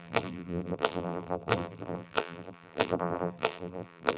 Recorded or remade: remade